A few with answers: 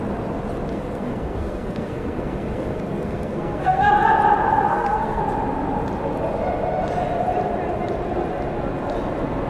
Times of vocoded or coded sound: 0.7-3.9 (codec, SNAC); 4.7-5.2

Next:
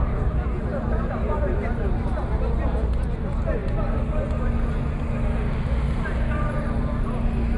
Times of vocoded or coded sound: none